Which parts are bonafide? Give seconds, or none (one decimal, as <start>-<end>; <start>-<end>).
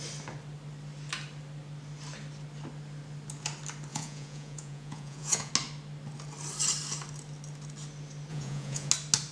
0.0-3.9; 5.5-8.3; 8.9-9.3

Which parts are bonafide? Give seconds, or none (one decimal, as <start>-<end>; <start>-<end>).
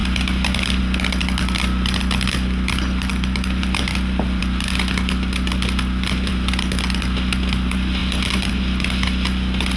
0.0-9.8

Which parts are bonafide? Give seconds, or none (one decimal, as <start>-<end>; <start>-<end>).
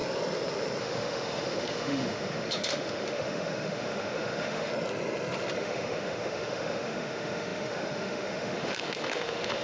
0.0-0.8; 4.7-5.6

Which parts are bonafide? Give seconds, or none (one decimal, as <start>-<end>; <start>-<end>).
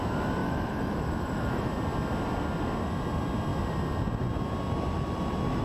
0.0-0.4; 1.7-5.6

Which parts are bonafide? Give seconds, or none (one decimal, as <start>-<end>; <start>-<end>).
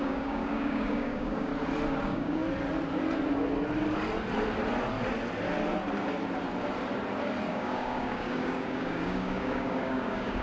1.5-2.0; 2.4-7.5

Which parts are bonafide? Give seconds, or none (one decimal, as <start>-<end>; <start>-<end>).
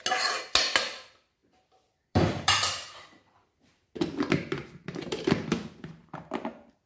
0.0-1.4; 3.7-6.9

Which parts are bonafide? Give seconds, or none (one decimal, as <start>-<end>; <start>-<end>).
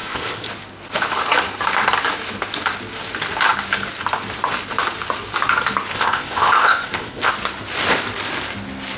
0.5-5.9; 7.3-9.0